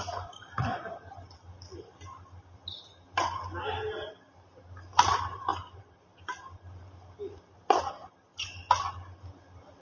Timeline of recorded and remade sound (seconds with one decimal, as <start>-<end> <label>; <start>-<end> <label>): 0.0-9.8 recorded